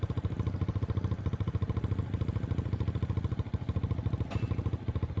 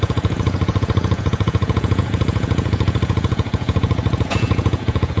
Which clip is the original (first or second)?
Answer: first